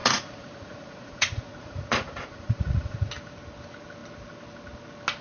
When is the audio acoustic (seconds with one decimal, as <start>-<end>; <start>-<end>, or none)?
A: 3.1-5.2